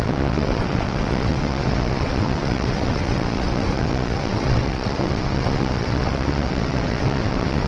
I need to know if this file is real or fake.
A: fake